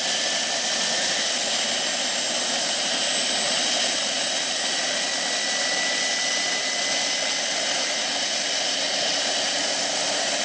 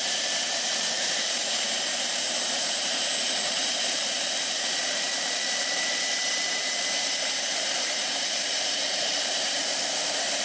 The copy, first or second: second